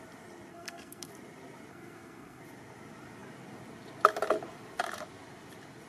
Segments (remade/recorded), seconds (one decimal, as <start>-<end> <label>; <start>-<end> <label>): 0.0-0.5 recorded; 0.5-1.1 remade; 1.1-1.7 recorded; 1.7-2.4 remade; 2.4-5.9 recorded